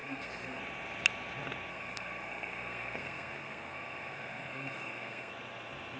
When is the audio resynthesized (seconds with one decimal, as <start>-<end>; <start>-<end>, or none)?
0.0-0.6; 1.7-5.3